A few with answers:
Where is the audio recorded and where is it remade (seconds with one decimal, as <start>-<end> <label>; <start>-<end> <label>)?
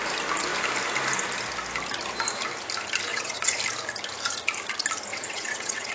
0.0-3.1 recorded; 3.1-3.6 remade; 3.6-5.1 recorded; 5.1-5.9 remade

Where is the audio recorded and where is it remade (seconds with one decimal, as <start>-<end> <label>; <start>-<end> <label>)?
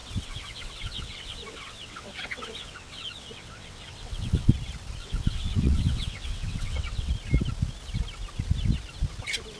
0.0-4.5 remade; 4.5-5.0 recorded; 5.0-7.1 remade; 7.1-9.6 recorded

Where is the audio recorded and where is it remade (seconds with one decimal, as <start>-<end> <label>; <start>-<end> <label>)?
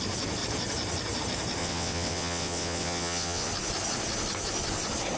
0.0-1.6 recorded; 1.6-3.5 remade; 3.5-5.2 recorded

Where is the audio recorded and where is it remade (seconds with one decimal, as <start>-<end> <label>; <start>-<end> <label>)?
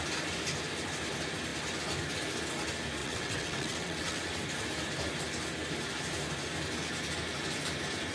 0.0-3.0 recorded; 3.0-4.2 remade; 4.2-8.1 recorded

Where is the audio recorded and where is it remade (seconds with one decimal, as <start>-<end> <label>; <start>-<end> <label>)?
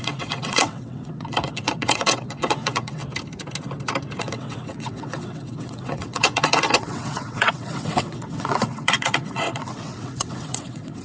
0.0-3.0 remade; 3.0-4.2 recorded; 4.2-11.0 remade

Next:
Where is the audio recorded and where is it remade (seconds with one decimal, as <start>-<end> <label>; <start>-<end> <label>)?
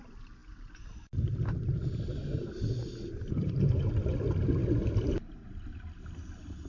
0.0-6.7 recorded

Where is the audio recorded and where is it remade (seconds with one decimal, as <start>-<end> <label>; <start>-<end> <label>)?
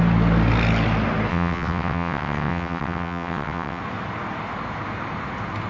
0.0-1.3 recorded; 1.3-3.8 remade; 3.8-5.7 recorded